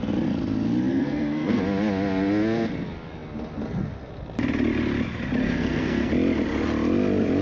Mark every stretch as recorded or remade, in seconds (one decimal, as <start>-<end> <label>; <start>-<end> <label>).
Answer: 0.0-0.9 recorded; 0.9-1.6 remade; 1.6-5.4 recorded; 5.4-6.1 remade; 6.1-7.4 recorded